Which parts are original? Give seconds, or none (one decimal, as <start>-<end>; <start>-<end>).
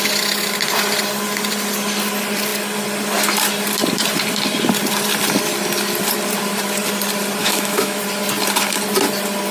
0.0-7.4; 8.0-9.5